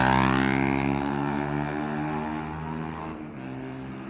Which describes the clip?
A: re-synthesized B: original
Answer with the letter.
B